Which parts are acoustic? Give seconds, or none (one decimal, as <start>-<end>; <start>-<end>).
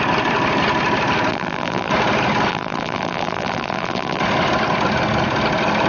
0.0-1.3; 1.9-2.5; 4.2-5.9